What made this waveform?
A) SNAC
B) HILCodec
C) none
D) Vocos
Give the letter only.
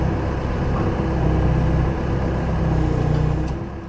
C